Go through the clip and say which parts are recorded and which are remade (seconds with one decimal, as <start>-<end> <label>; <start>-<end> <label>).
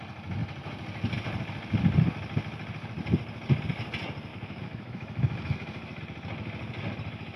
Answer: 0.0-4.3 recorded; 4.3-6.0 remade; 6.0-7.4 recorded